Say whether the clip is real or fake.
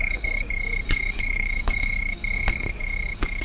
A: fake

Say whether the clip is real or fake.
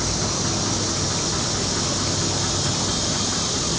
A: real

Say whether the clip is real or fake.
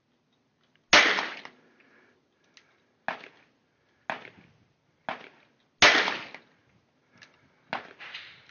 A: real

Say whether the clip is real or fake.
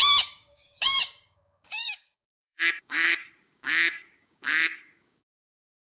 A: fake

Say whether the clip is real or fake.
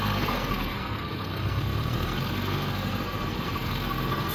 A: fake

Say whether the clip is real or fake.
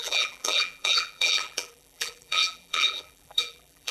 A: fake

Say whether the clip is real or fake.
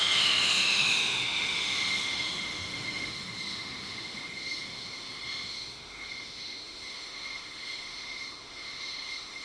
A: fake